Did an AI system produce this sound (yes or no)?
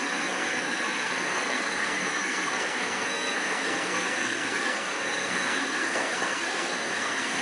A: yes